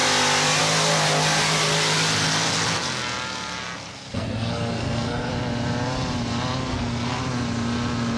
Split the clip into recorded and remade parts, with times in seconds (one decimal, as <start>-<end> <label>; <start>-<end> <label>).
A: 0.0-3.9 recorded; 3.9-5.3 remade; 5.3-6.7 recorded; 6.7-7.2 remade; 7.2-8.2 recorded